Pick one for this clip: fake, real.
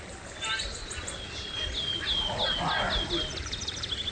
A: real